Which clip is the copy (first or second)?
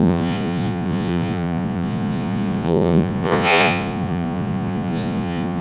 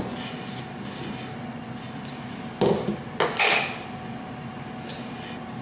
first